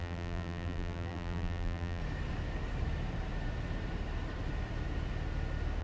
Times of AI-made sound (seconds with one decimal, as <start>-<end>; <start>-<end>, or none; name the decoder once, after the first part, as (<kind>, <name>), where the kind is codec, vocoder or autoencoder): 0.0-2.0 (vocoder, BigVGAN v2)